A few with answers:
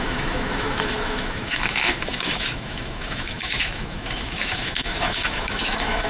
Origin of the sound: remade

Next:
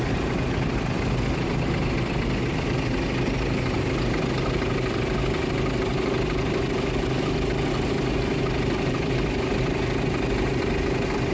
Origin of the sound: recorded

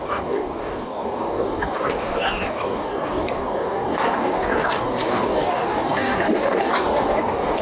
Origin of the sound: remade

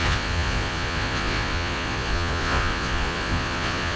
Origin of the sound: remade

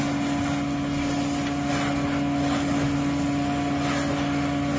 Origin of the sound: recorded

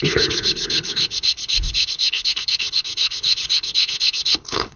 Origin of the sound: remade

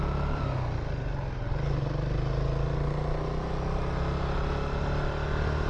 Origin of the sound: recorded